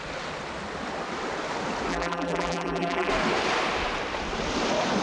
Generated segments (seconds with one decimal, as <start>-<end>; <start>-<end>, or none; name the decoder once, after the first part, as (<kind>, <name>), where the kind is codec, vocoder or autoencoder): 1.9-3.1 (vocoder, BigVGAN v2)